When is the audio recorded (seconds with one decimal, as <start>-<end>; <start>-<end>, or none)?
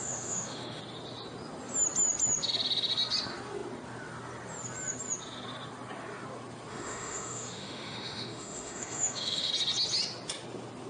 0.8-6.7; 9.5-10.9